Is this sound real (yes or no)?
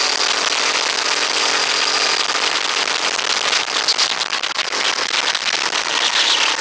yes